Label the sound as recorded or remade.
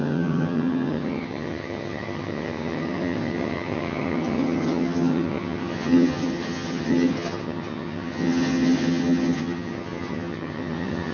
remade